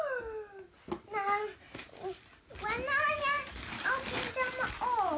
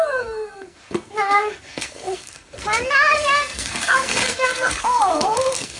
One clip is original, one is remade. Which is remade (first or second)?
second